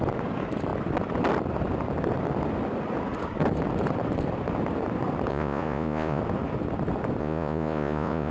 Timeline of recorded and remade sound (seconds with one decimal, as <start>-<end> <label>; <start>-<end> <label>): 0.0-5.3 recorded; 5.3-6.2 remade; 6.2-7.2 recorded; 7.2-8.3 remade